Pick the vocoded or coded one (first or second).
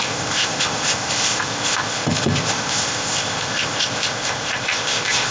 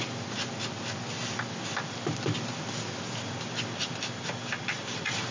first